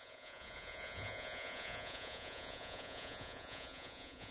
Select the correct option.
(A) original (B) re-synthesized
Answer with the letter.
B